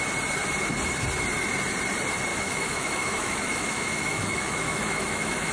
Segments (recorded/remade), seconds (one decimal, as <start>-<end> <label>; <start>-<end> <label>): 0.0-2.3 recorded; 2.3-5.5 remade